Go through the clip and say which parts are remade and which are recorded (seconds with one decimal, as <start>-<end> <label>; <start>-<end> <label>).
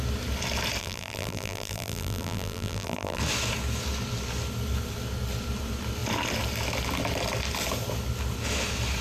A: 0.0-0.8 recorded; 0.8-3.2 remade; 3.2-9.0 recorded